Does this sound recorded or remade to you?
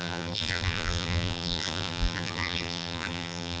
remade